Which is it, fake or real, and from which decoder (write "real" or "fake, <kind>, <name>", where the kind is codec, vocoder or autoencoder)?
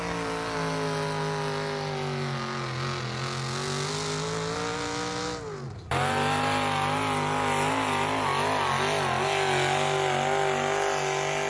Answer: real